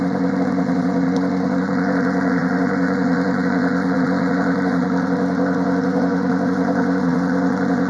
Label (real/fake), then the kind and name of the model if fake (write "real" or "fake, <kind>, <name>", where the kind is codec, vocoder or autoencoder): fake, vocoder, Vocos